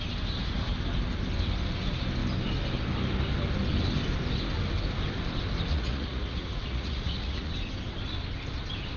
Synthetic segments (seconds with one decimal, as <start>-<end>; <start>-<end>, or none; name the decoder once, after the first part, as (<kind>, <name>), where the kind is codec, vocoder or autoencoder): 5.7-7.5 (vocoder, Vocos)